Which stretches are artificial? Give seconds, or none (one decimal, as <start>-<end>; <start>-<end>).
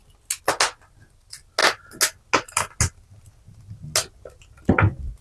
none